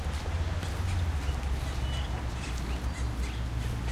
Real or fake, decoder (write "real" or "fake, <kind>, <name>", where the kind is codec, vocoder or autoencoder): real